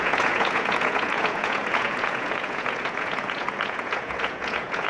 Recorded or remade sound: remade